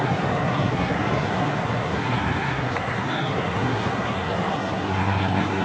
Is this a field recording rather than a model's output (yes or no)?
no